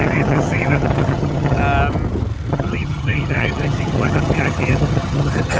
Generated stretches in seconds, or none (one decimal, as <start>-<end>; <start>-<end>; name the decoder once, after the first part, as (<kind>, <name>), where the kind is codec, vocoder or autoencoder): 0.0-1.6 (vocoder, HiFi-GAN); 2.5-5.6